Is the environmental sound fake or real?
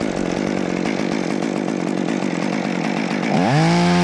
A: real